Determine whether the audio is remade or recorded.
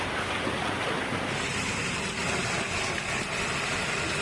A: recorded